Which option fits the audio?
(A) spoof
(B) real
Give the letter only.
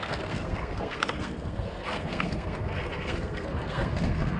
A